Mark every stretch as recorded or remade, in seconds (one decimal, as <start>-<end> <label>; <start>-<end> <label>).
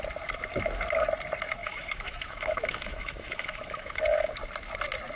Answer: 0.0-1.6 recorded; 1.6-4.3 remade; 4.3-5.2 recorded